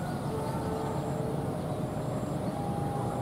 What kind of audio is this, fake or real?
real